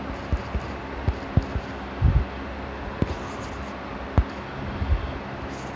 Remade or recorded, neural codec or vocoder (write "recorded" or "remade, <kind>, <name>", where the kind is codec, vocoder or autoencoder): recorded